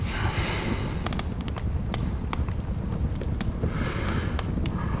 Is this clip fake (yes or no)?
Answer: no